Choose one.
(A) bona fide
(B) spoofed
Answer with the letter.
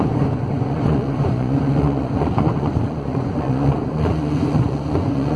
B